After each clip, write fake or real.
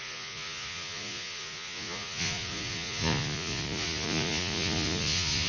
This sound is fake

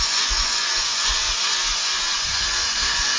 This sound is fake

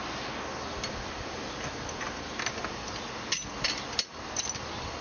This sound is real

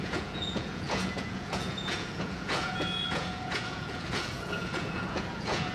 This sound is fake